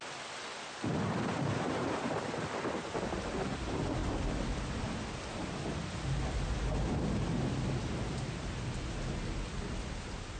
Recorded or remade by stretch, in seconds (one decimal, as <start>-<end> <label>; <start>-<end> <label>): 0.0-10.4 recorded